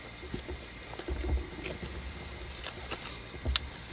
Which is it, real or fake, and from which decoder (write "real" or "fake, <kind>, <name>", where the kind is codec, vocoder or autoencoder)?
real